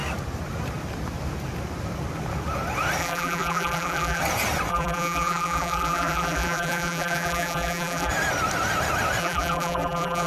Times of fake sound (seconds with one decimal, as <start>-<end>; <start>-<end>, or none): 3.0-4.2; 4.7-8.1; 9.2-10.3